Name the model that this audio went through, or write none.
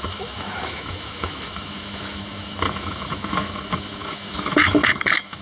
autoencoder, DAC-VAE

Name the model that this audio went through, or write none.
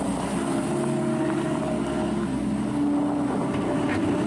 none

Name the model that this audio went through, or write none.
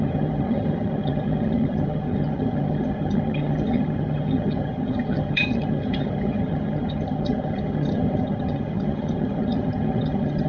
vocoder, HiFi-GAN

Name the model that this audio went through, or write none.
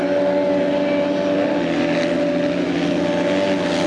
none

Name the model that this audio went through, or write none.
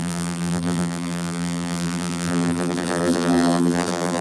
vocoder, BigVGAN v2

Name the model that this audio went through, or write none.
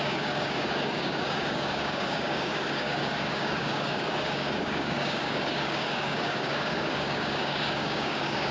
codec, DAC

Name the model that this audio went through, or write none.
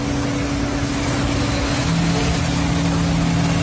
none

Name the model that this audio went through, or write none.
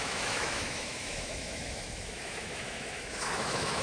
autoencoder, DAC-VAE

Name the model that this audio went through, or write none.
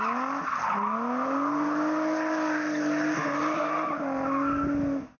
none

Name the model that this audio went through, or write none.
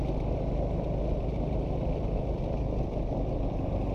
none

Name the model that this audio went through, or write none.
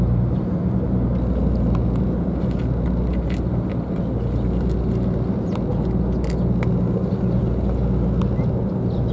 none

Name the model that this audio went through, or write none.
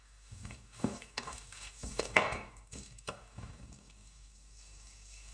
codec, DAC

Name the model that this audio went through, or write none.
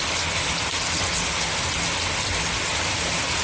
none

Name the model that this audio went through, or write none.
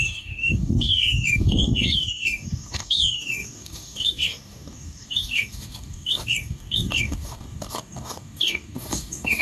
codec, DAC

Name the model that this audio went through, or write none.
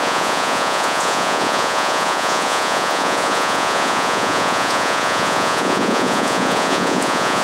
vocoder, Vocos